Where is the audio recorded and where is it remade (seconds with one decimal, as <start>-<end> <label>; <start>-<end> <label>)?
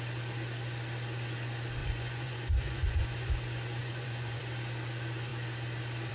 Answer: 0.0-1.8 recorded; 1.8-3.3 remade; 3.3-3.8 recorded; 3.8-4.4 remade; 4.4-6.1 recorded